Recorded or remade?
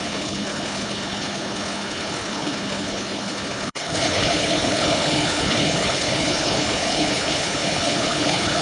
remade